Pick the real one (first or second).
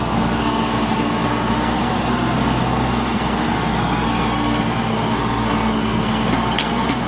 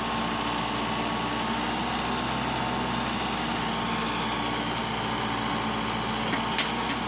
second